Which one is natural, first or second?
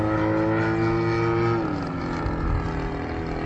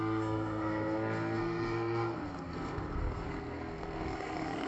first